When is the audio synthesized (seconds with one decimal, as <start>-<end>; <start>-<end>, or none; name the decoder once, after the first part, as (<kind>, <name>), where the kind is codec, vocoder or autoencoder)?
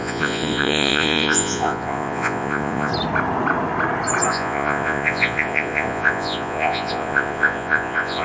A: 0.0-2.9 (vocoder, Vocos); 4.3-8.2